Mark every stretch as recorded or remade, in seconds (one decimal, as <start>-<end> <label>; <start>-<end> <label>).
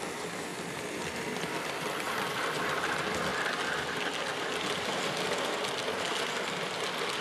0.0-7.2 recorded